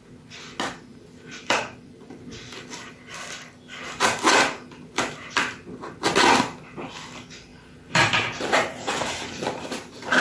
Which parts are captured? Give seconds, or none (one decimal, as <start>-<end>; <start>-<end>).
0.0-0.9; 3.8-7.5